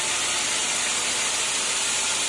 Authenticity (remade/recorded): recorded